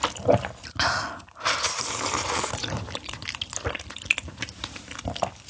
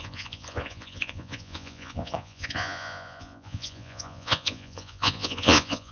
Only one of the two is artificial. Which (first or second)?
second